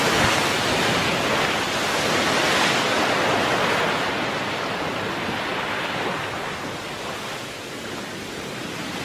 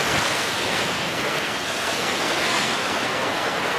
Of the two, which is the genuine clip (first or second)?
first